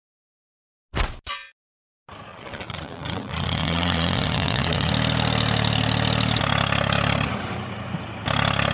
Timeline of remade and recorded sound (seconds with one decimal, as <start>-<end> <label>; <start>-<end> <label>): 0.0-2.3 recorded; 2.3-4.9 remade; 4.9-8.7 recorded

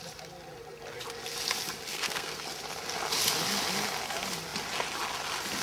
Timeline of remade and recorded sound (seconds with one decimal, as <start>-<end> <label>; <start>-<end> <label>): 0.0-1.9 recorded; 1.9-2.5 remade; 2.5-5.6 recorded

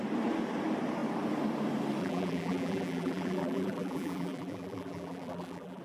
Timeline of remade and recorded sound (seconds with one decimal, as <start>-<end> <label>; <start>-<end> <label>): 0.0-2.0 recorded; 2.0-5.8 remade

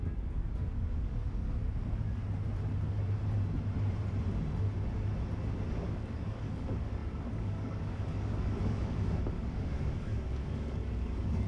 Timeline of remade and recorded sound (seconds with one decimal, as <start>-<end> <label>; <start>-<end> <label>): 0.0-1.6 remade; 1.6-5.7 recorded; 5.7-11.5 remade

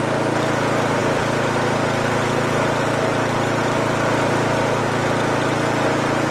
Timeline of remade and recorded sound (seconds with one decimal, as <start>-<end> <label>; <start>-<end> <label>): 0.0-6.3 recorded

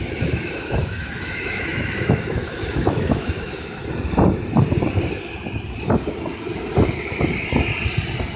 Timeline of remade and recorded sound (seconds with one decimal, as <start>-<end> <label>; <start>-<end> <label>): 0.0-3.8 remade; 3.8-8.4 recorded

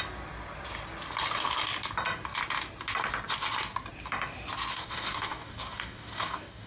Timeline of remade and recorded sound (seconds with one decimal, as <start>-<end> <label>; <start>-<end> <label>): 0.0-4.7 recorded; 4.7-6.7 remade